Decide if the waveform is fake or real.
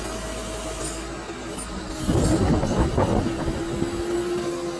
real